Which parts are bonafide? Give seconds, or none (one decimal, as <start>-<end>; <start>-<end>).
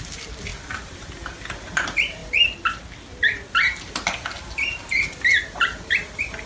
0.0-6.5